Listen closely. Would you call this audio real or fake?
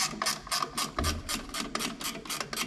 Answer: real